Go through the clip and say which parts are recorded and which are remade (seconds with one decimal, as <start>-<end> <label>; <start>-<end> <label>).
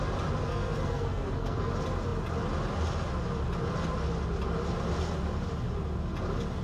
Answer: 0.0-0.4 recorded; 0.4-1.7 remade; 1.7-6.6 recorded